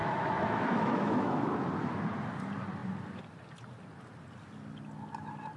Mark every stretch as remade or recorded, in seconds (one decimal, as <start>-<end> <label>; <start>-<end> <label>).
0.0-1.5 remade; 1.5-5.6 recorded